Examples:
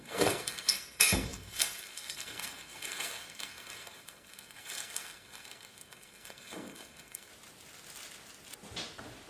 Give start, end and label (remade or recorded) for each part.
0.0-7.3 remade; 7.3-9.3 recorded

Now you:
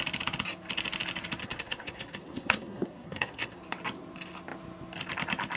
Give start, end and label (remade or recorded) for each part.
0.0-1.4 recorded; 1.4-3.6 remade; 3.6-5.6 recorded